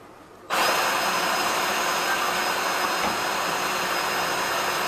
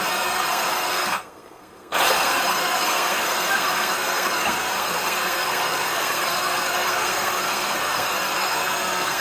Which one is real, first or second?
first